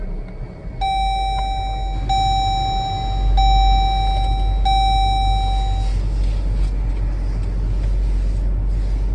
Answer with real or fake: real